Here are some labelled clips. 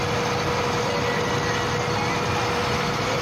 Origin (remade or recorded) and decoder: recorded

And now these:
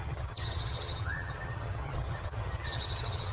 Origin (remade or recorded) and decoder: remade, vocoder, HiFi-GAN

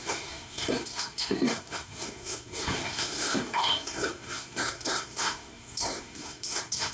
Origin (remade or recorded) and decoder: remade, codec, SNAC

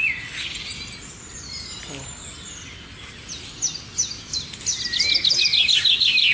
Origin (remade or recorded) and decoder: recorded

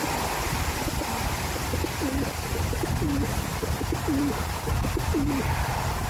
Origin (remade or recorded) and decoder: recorded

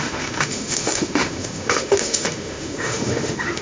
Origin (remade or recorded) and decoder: remade, autoencoder, DAC-VAE